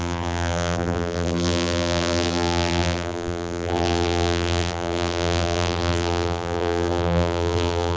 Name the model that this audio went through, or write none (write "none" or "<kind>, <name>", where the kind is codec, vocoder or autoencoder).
vocoder, BigVGAN v2